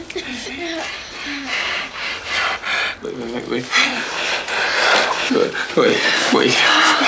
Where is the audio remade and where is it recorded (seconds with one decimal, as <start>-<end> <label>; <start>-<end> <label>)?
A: 0.0-1.3 recorded; 1.3-2.1 remade; 2.1-7.1 recorded